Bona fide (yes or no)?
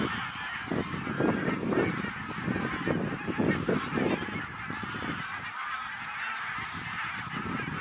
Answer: yes